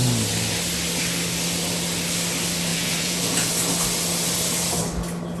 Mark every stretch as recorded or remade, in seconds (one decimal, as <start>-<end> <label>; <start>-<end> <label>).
0.0-2.7 recorded; 2.7-3.5 remade; 3.5-5.4 recorded